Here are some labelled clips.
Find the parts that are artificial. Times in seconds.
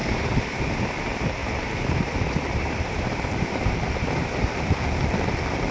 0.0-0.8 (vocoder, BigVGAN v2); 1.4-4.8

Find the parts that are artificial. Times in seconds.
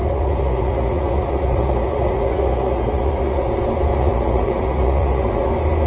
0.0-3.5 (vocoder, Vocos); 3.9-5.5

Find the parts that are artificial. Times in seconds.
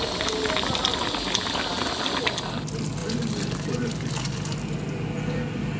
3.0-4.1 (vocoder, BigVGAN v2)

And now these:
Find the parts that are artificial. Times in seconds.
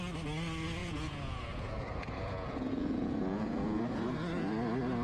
0.8-3.8 (vocoder, Vocos)